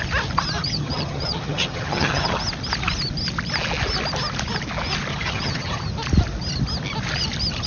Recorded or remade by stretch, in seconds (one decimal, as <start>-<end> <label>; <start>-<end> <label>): 0.0-0.6 recorded; 0.6-2.4 remade; 2.4-5.1 recorded; 5.1-5.8 remade; 5.8-7.7 recorded